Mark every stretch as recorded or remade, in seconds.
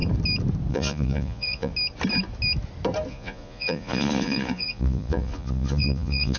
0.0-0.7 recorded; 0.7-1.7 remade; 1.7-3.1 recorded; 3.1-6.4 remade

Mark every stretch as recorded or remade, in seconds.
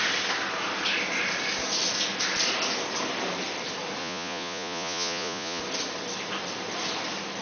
0.0-4.0 recorded; 4.0-5.6 remade; 5.6-7.4 recorded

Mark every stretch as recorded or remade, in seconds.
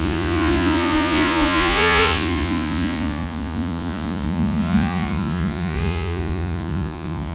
0.0-7.3 remade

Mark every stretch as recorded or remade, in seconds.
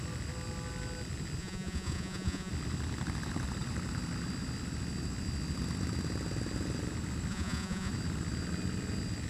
0.0-1.4 recorded; 1.4-2.5 remade; 2.5-7.3 recorded; 7.3-7.9 remade; 7.9-9.3 recorded